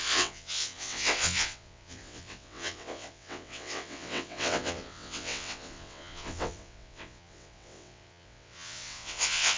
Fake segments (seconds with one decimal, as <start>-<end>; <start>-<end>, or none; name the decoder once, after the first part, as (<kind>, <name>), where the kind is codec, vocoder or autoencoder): 0.0-9.6 (vocoder, WaveNeXt)